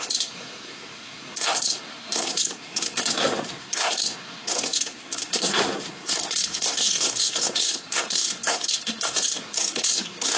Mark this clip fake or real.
fake